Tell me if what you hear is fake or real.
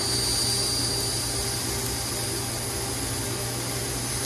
real